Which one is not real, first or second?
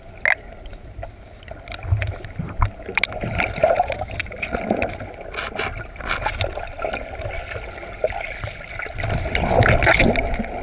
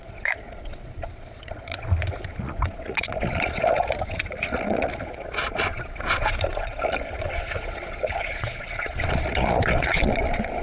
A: second